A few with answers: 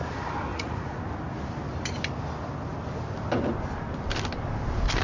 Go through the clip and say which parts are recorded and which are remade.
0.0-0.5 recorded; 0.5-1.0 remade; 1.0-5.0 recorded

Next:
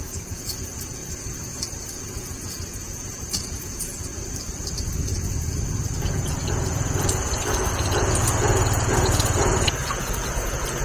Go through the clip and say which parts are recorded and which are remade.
0.0-1.0 remade; 1.0-2.0 recorded; 2.0-4.1 remade; 4.1-6.0 recorded; 6.0-10.8 remade

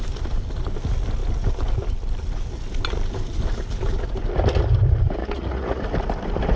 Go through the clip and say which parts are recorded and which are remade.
0.0-5.2 recorded; 5.2-5.8 remade; 5.8-6.6 recorded

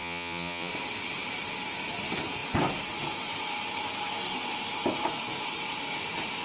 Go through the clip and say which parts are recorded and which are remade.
0.0-0.7 remade; 0.7-6.4 recorded

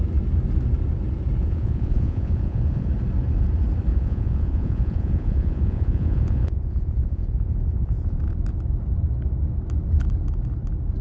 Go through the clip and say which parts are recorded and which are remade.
0.0-1.4 recorded; 1.4-2.9 remade; 2.9-3.9 recorded; 3.9-8.2 remade; 8.2-11.0 recorded

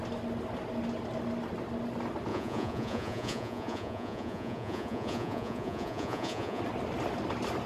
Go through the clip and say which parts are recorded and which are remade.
0.0-2.3 recorded; 2.3-6.6 remade; 6.6-7.7 recorded

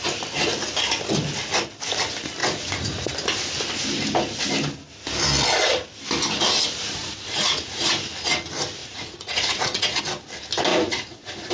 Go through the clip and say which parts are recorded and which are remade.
0.0-2.4 recorded; 2.4-3.1 remade; 3.1-6.9 recorded; 6.9-7.9 remade; 7.9-8.8 recorded; 8.8-10.0 remade; 10.0-10.7 recorded; 10.7-11.5 remade

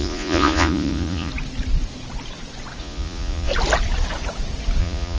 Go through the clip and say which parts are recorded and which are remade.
0.0-1.3 remade; 1.3-2.8 recorded; 2.8-3.5 remade; 3.5-4.8 recorded; 4.8-5.2 remade